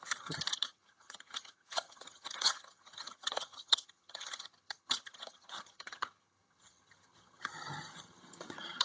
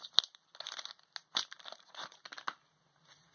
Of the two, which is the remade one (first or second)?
first